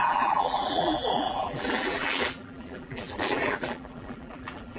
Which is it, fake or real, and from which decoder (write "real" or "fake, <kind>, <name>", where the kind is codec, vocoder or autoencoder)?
fake, vocoder, BigVGAN v2